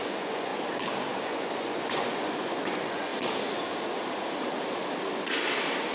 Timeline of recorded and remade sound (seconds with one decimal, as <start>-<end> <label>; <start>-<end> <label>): 0.0-0.5 remade; 0.5-1.2 recorded; 1.2-3.1 remade; 3.1-5.9 recorded